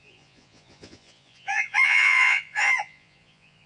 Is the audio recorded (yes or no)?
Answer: no